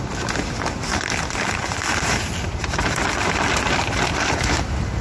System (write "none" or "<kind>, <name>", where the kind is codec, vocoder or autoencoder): none